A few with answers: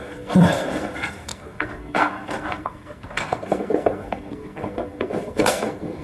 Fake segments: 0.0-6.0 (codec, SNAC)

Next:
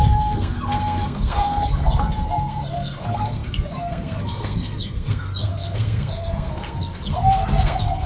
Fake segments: 0.0-8.1 (codec, SNAC)

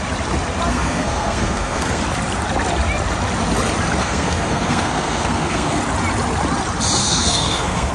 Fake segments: 0.7-2.0 (codec, SNAC); 4.0-5.8; 7.0-7.9

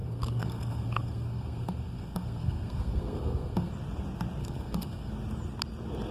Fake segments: 0.0-3.7 (codec, SNAC); 4.4-5.1

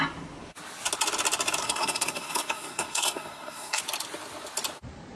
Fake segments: 1.6-3.8 (codec, SNAC)

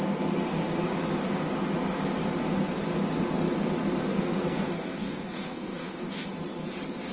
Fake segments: 4.1-6.3 (codec, SNAC)

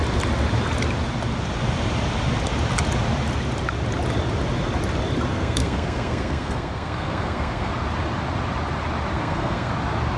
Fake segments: 5.3-7.7 (codec, SNAC); 9.1-9.7

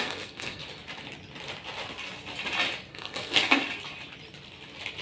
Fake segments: 0.0-0.6 (codec, SNAC); 2.9-3.6